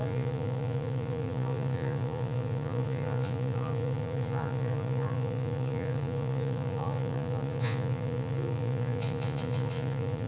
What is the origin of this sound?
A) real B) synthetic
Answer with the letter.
B